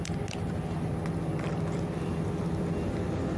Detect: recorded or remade recorded